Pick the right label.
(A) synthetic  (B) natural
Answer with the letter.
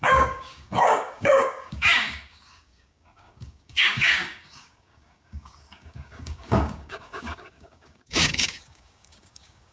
A